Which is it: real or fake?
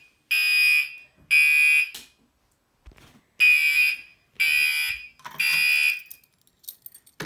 real